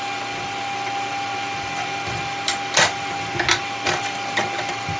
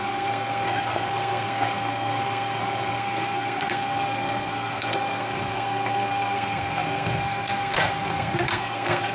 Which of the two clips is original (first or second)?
first